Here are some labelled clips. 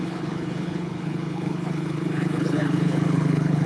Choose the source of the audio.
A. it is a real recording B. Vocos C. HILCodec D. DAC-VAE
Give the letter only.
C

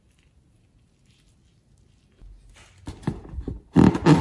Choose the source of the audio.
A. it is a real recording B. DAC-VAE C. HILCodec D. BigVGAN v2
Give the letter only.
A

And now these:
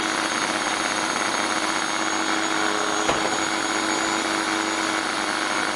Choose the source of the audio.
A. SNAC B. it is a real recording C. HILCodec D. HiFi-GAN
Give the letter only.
B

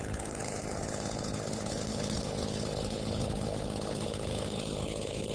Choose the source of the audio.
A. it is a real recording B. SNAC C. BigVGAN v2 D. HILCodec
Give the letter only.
D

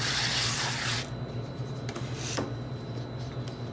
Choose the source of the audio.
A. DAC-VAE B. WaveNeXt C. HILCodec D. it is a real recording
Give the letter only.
D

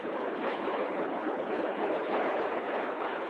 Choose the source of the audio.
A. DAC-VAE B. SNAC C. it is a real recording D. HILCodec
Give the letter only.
D